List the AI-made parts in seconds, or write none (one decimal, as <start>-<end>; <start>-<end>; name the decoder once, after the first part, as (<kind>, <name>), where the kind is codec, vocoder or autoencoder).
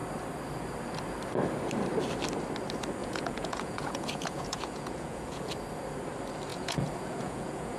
3.0-5.5 (vocoder, Vocos); 6.5-7.8